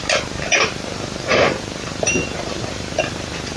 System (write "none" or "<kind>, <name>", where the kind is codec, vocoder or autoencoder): vocoder, BigVGAN v2